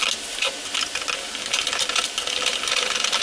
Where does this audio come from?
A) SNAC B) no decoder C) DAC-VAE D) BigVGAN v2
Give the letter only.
B